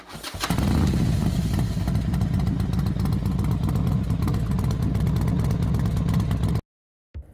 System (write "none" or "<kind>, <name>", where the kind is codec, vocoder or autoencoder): none